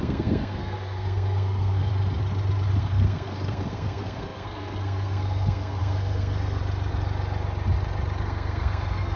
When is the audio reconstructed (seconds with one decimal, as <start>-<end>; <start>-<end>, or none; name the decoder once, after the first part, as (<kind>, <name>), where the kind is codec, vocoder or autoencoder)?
0.0-1.9 (codec, SNAC); 2.8-6.6; 8.2-9.2